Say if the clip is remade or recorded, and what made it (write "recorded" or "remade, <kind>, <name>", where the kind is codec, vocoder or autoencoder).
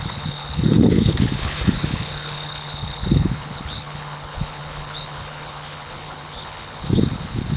remade, codec, HILCodec